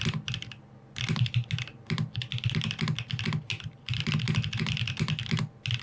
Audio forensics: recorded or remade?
recorded